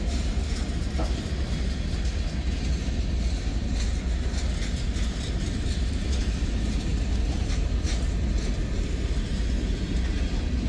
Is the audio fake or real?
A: real